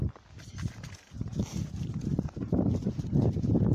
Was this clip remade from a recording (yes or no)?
no